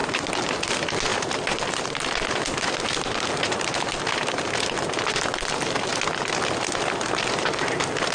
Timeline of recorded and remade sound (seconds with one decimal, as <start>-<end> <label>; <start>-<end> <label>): 0.0-8.1 recorded